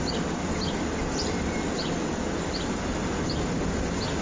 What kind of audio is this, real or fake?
real